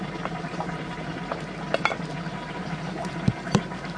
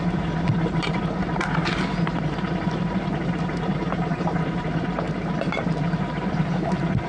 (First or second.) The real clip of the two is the first